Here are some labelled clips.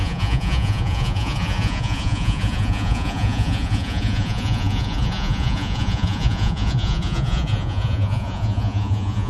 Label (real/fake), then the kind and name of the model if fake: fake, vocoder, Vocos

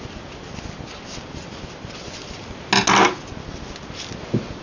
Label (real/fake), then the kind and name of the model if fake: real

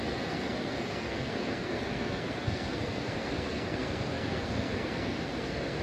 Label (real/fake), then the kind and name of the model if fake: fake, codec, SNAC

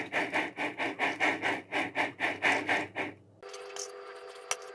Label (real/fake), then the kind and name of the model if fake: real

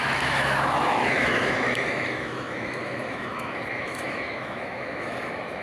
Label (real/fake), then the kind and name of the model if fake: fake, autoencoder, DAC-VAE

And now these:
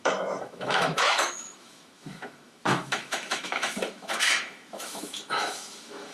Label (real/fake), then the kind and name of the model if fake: fake, autoencoder, DAC-VAE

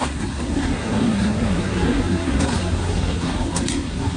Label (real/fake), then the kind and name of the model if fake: fake, codec, SNAC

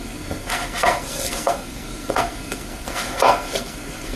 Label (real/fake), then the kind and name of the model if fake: fake, codec, SNAC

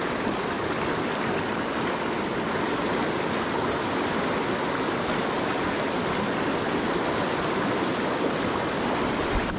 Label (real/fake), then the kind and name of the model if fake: real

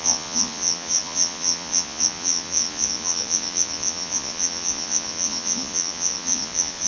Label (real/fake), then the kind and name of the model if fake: fake, vocoder, Vocos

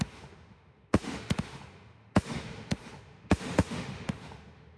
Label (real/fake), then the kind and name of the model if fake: fake, autoencoder, DAC-VAE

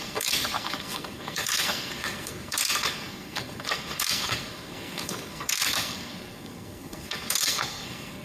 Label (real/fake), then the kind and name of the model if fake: fake, codec, SNAC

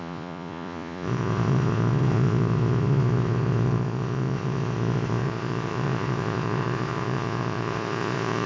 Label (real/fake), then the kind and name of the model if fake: fake, vocoder, Vocos